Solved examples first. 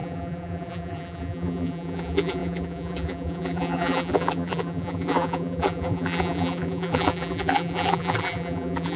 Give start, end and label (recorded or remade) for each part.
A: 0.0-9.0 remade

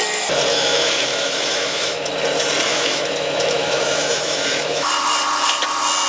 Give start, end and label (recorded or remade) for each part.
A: 0.0-0.5 recorded; 0.5-2.1 remade; 2.1-2.7 recorded; 2.7-4.9 remade; 4.9-6.1 recorded